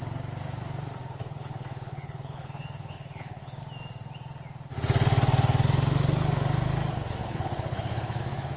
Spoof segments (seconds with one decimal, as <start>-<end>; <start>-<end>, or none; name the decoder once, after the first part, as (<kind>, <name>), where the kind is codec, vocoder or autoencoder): 1.2-3.6 (codec, HILCodec); 7.2-8.2